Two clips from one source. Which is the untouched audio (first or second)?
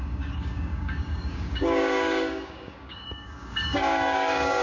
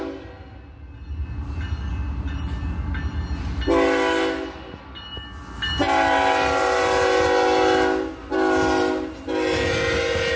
second